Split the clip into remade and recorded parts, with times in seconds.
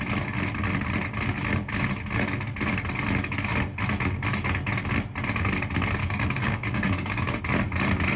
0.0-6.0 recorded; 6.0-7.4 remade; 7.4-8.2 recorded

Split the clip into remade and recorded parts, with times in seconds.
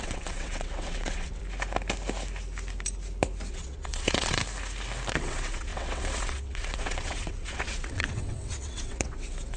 0.0-1.4 remade; 1.4-3.5 recorded; 3.5-4.4 remade; 4.4-5.1 recorded; 5.1-9.6 remade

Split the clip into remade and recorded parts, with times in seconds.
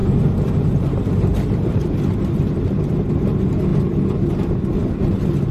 0.0-1.9 remade; 1.9-5.5 recorded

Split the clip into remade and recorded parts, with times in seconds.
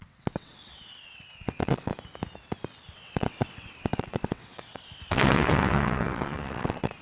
0.0-1.9 remade; 1.9-2.9 recorded; 2.9-7.0 remade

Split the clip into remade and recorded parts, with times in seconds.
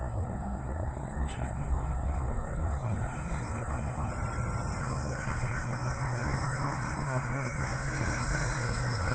0.0-4.1 remade; 4.1-4.8 recorded; 4.8-9.1 remade